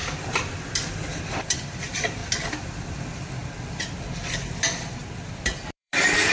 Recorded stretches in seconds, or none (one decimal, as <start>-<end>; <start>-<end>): 0.0-1.6; 2.2-2.9; 3.4-4.3